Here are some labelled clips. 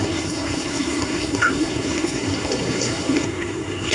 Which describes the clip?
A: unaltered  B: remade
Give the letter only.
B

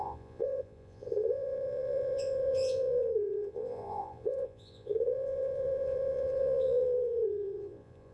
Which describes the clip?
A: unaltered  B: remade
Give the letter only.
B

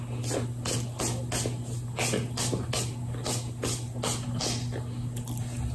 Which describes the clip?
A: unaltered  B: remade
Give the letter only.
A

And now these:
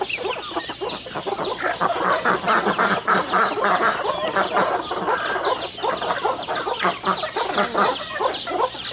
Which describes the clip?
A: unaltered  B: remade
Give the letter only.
A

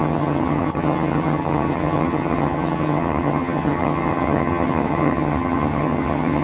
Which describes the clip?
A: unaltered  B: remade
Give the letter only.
B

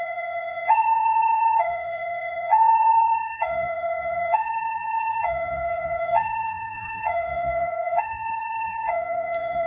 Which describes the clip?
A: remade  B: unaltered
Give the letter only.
A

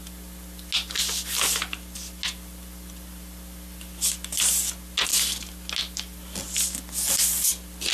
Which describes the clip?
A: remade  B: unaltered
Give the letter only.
B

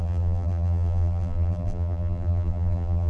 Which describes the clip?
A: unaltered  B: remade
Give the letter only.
B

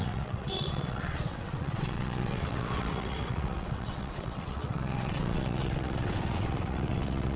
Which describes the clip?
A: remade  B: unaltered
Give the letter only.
A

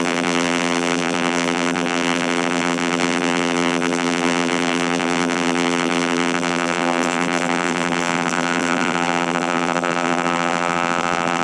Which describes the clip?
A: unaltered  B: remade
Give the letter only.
B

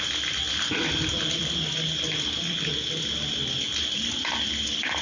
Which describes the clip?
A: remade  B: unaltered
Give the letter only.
B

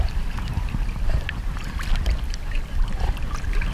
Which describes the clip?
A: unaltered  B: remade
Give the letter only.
A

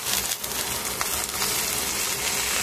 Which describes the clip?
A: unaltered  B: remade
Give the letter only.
A